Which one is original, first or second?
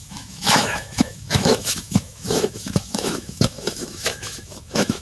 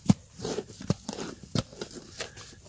second